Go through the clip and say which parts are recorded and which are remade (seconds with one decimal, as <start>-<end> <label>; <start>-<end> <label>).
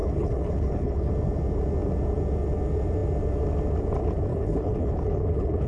0.0-1.1 remade; 1.1-4.3 recorded; 4.3-5.7 remade